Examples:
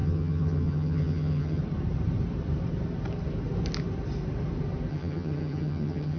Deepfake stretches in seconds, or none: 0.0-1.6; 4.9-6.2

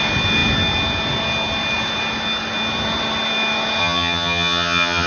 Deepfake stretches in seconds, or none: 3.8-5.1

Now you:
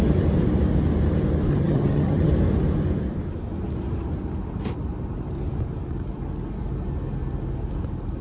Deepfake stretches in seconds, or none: 1.5-2.3

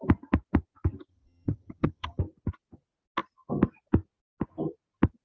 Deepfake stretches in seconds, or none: 1.1-2.2

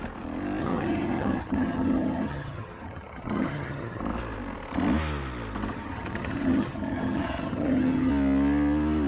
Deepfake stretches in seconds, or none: 0.6-4.0; 5.7-8.1

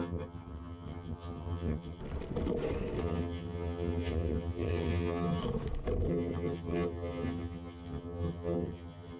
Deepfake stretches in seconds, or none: 0.0-2.0; 3.0-5.4; 6.1-9.2